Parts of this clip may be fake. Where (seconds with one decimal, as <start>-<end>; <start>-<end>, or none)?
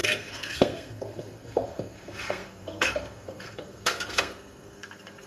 0.0-5.3